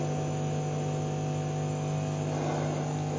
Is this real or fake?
real